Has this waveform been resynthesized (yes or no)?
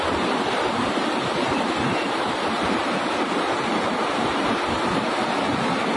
yes